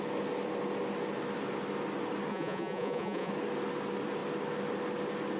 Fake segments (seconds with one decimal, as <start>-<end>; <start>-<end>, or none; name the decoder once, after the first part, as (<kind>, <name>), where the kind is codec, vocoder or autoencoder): 2.3-3.3 (vocoder, Vocos)